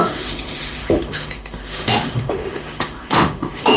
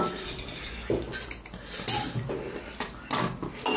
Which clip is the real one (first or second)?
second